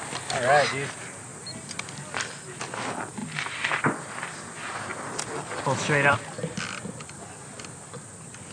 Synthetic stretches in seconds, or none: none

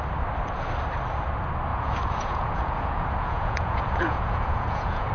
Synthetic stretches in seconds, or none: 1.7-5.1 (vocoder, Vocos)

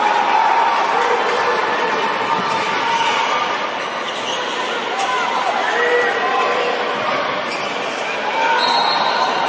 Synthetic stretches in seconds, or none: none